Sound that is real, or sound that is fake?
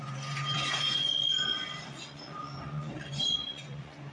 fake